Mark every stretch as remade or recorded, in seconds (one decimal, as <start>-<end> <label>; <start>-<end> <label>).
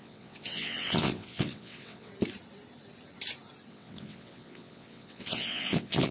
0.0-2.1 remade; 2.1-3.7 recorded; 3.7-6.1 remade